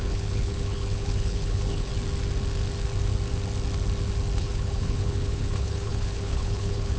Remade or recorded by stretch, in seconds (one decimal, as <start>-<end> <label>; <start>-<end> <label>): 0.0-1.9 remade; 1.9-4.4 recorded; 4.4-7.0 remade